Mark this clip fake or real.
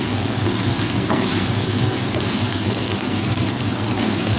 fake